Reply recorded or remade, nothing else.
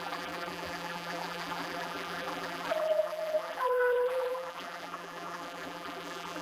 remade